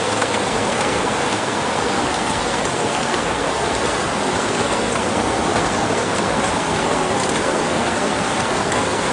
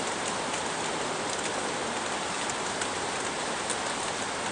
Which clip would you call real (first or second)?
second